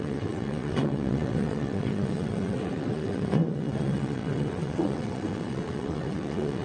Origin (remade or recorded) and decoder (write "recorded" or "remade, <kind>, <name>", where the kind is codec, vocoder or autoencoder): remade, vocoder, WaveNeXt